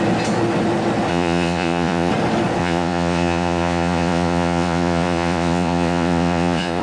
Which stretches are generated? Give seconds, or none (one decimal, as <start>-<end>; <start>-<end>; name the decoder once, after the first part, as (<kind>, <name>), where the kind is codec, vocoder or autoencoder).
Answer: 1.1-2.1 (vocoder, Vocos); 2.6-6.8